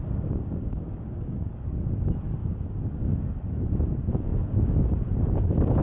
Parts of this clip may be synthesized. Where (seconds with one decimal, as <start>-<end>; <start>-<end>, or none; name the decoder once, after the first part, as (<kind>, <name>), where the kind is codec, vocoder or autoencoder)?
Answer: 0.4-1.5 (codec, DAC); 2.4-3.2